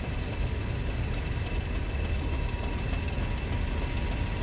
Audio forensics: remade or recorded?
recorded